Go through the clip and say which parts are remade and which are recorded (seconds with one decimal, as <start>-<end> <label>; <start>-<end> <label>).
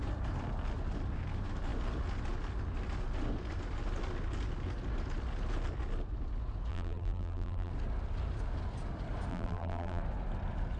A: 0.0-6.7 recorded; 6.7-7.7 remade; 7.7-9.3 recorded; 9.3-10.0 remade; 10.0-10.8 recorded